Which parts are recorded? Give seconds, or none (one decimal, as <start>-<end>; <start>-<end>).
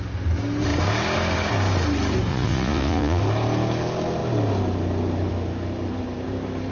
0.0-2.3; 3.2-6.7